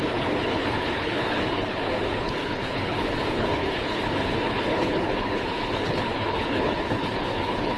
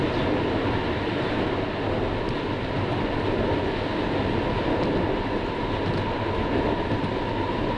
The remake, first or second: first